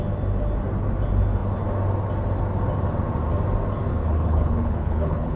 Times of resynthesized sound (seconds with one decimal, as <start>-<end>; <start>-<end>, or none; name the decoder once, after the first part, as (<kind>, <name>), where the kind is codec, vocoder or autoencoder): 4.0-5.4 (codec, HILCodec)